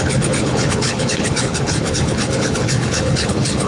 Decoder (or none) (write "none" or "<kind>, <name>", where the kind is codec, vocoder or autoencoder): codec, HILCodec